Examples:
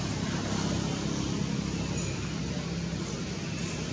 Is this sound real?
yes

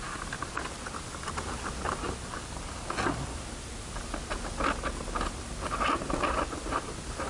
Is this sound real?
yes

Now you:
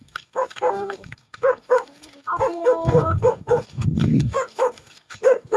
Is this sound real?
no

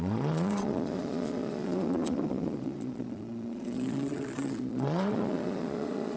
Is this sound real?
no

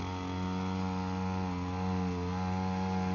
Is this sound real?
yes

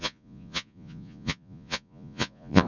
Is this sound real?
no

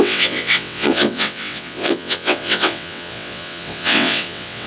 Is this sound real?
no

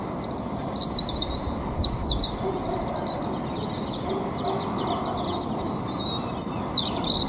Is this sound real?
yes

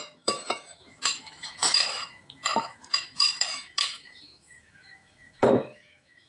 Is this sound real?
no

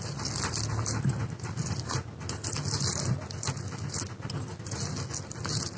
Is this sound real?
yes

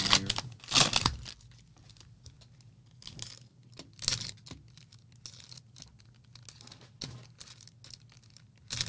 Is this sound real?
yes